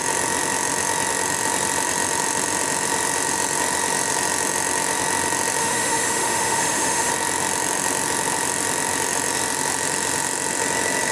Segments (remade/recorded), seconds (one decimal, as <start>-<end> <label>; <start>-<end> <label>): 0.0-5.6 recorded; 5.6-7.1 remade; 7.1-11.1 recorded